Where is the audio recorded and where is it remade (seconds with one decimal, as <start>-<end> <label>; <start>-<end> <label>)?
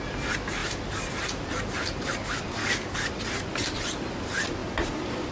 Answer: 0.0-2.6 recorded; 2.6-3.1 remade; 3.1-5.3 recorded